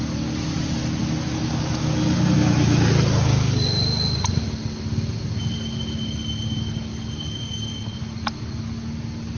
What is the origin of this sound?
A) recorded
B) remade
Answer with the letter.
A